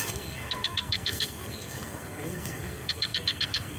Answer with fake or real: fake